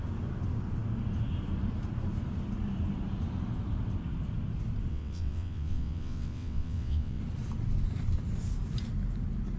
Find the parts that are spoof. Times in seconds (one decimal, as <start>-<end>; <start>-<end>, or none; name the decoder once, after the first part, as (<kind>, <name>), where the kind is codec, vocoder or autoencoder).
4.9-7.2 (vocoder, WaveNeXt)